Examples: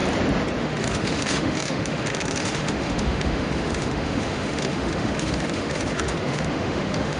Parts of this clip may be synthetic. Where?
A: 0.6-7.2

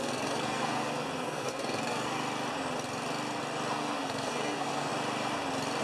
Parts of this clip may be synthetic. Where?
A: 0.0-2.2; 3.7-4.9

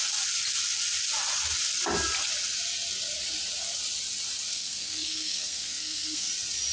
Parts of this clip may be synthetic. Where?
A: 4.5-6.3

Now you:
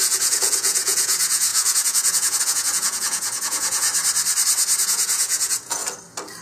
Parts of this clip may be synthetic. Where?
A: 0.0-3.9; 4.8-5.8